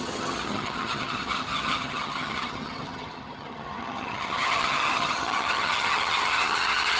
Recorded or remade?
remade